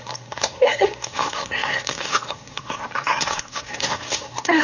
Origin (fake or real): fake